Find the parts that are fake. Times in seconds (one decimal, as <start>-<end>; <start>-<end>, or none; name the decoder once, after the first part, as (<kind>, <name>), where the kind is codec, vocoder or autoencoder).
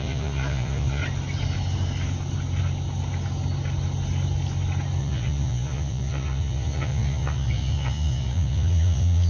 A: 0.0-1.0 (vocoder, Vocos); 5.0-9.3